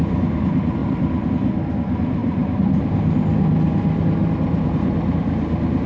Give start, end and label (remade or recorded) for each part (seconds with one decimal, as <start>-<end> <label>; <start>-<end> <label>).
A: 0.0-0.8 recorded; 0.8-1.3 remade; 1.3-2.2 recorded; 2.2-2.8 remade; 2.8-4.2 recorded; 4.2-4.9 remade; 4.9-5.9 recorded